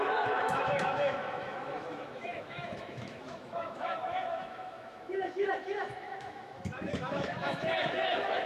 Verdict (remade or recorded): remade